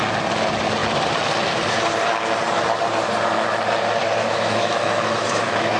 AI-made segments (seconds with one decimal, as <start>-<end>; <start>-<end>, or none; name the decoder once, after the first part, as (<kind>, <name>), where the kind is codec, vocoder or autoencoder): 4.2-5.8 (autoencoder, DAC-VAE)

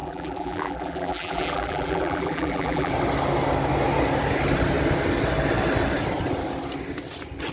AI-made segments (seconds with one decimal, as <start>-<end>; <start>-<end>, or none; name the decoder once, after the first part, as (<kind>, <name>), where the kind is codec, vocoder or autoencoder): 0.0-2.9 (vocoder, BigVGAN v2)

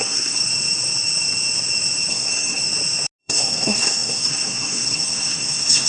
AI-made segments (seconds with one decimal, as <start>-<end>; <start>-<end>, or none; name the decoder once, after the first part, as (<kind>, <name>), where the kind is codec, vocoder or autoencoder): 0.0-0.4 (codec, SNAC); 2.1-2.6; 3.2-5.9

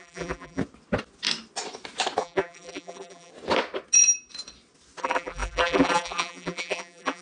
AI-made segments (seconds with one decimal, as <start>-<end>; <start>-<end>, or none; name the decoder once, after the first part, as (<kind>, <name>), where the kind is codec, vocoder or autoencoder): 0.0-0.6 (vocoder, BigVGAN v2); 2.2-3.3; 5.0-7.2